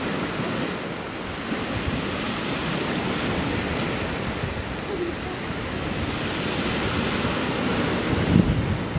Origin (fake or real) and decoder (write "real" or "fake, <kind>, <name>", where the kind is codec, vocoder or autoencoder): real